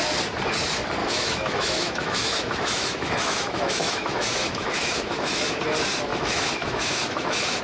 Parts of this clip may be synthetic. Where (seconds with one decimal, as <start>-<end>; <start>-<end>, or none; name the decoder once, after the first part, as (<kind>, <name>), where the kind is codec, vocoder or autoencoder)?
1.0-5.6 (autoencoder, DAC-VAE); 6.1-7.6